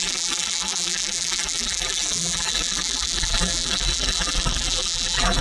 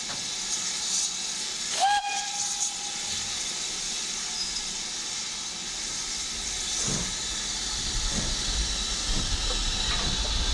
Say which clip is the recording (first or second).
second